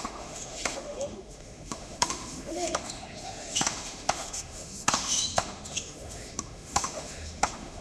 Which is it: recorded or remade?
remade